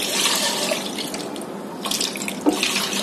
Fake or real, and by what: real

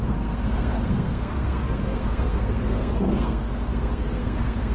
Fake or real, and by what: fake, codec, SNAC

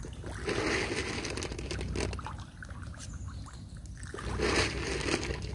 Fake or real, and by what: real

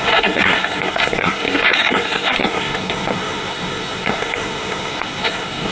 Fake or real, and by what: fake, codec, SNAC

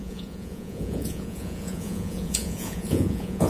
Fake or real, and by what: fake, vocoder, Vocos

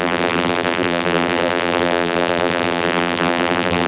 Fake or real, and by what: fake, vocoder, BigVGAN v2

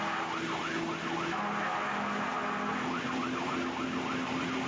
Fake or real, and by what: real